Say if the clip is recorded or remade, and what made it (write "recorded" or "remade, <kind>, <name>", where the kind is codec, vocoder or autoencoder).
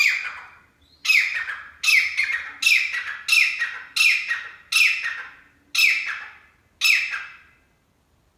recorded